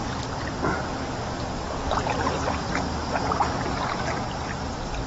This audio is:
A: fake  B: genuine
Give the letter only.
B